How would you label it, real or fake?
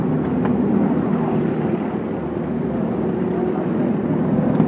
real